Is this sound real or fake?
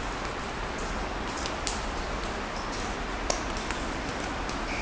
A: real